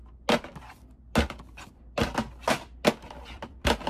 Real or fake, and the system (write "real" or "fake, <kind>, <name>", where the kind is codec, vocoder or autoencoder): real